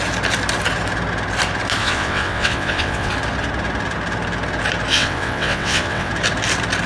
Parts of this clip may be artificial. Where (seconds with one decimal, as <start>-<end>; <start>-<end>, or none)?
1.8-3.1; 4.9-6.1